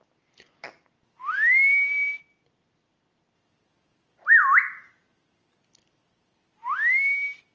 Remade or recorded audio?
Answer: recorded